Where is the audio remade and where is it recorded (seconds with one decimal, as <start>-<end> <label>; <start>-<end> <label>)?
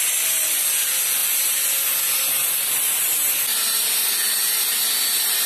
0.0-5.5 recorded